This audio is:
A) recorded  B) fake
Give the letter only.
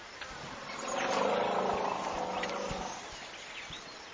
A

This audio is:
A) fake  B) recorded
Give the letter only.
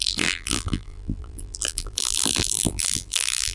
A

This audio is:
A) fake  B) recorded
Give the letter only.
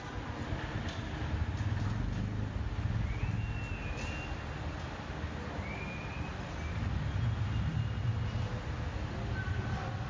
B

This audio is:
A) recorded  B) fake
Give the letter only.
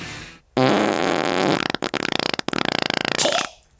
A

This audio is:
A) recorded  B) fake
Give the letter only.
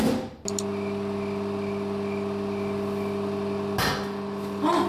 A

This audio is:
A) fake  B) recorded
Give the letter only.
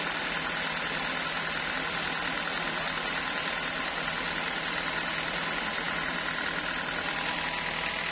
B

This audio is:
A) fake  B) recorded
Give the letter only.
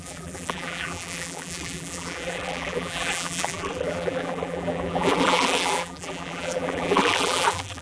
A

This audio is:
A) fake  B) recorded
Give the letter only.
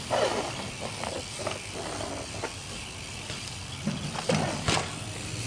B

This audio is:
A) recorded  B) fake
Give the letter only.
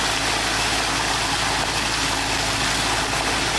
A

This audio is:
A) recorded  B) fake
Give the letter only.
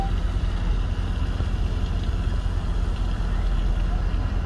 A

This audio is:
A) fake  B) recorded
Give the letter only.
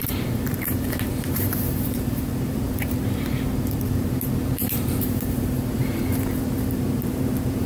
A